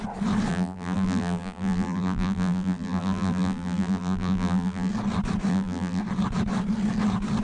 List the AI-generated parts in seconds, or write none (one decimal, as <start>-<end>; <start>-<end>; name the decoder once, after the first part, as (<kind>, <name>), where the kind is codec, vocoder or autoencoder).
0.5-4.9 (vocoder, BigVGAN v2); 5.5-6.0